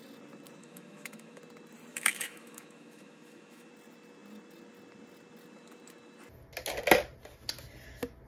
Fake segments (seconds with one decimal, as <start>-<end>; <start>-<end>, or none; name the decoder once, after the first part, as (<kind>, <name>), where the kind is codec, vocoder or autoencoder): 0.6-1.4 (autoencoder, DAC-VAE); 1.9-3.7

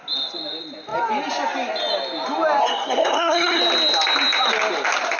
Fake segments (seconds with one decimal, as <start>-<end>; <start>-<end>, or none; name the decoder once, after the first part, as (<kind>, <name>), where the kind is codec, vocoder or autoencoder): 2.6-3.6 (codec, SNAC)

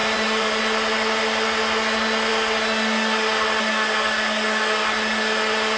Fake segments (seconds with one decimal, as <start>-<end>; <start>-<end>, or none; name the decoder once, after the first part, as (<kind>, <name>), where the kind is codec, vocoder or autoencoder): 0.0-0.6 (vocoder, BigVGAN v2)